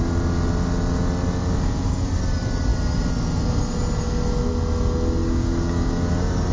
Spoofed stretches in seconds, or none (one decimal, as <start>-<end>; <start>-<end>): 5.2-5.9